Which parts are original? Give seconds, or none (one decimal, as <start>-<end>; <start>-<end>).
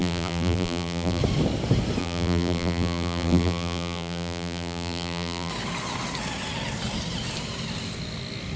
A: 1.2-2.0; 5.5-8.6